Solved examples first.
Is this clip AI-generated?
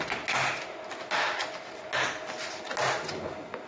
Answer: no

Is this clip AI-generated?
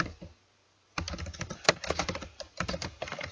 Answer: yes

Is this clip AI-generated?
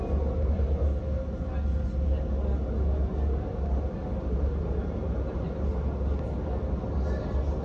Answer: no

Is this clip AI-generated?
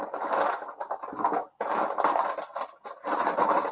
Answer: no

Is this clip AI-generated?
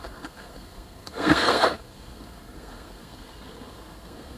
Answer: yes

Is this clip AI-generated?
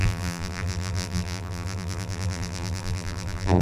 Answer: yes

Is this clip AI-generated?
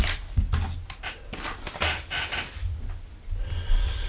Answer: yes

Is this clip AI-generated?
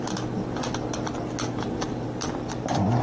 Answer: no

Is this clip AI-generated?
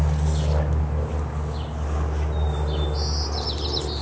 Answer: no